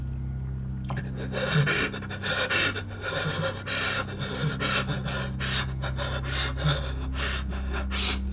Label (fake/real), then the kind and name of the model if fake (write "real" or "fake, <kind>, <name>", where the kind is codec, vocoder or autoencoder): real